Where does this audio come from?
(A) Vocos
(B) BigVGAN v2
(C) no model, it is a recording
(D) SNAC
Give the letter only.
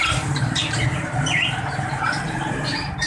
B